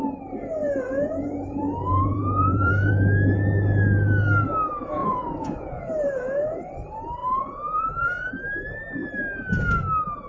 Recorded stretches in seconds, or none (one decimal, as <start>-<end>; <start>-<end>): 0.0-0.6; 2.9-5.0; 6.6-7.2; 8.3-10.3